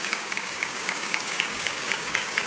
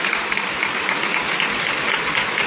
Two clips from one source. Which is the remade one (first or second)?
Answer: first